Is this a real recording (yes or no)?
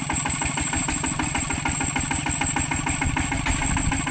yes